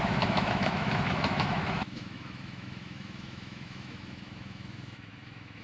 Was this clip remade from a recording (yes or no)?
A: yes